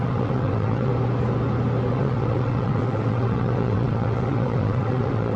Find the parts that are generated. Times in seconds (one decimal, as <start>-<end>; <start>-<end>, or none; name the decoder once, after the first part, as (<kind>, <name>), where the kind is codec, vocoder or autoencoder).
0.0-0.9 (vocoder, WaveNeXt); 1.9-5.4